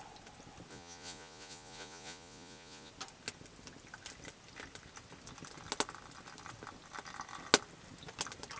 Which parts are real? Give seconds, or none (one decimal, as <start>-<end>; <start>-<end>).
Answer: 0.0-0.7; 2.9-8.6